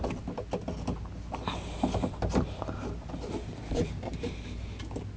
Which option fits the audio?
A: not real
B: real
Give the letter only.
B